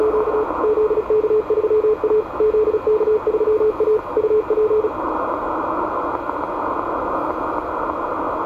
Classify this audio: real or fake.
real